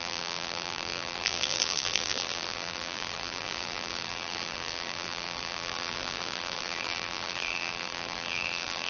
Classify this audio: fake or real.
fake